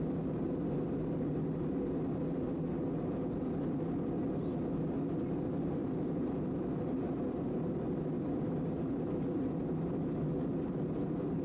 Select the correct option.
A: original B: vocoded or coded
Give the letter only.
A